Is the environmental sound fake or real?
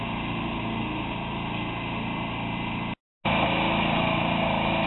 real